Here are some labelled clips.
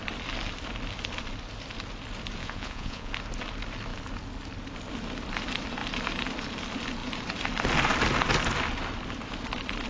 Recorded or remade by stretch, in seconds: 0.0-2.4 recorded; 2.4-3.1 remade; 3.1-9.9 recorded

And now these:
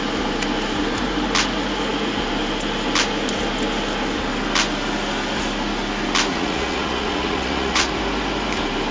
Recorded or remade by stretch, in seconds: 0.0-6.3 recorded; 6.3-7.9 remade; 7.9-8.9 recorded

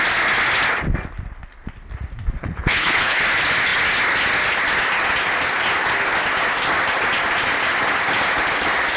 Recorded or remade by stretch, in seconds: 0.0-2.4 recorded; 2.4-3.2 remade; 3.2-9.0 recorded

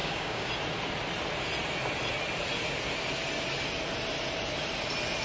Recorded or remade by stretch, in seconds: 0.0-0.5 remade; 0.5-5.2 recorded

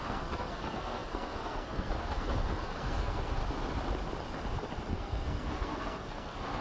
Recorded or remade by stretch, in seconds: 0.0-3.4 remade; 3.4-4.9 recorded; 4.9-6.6 remade

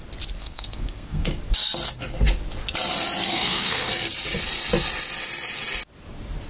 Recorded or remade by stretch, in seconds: 0.0-0.4 recorded; 0.4-1.3 remade; 1.3-3.3 recorded; 3.3-3.9 remade; 3.9-6.5 recorded

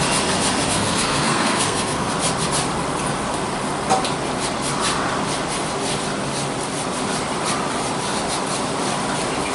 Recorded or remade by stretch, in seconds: 0.0-0.7 recorded; 0.7-2.1 remade; 2.1-9.5 recorded